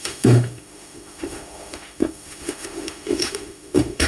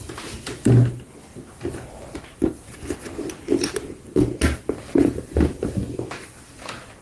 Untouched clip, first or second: second